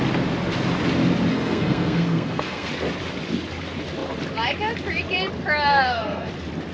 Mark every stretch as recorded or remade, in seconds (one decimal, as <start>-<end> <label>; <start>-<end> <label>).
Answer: 0.0-1.3 recorded; 1.3-2.7 remade; 2.7-5.7 recorded; 5.7-6.3 remade; 6.3-6.7 recorded